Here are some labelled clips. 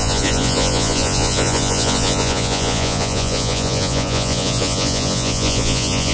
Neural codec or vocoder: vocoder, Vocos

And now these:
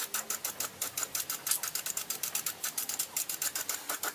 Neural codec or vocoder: none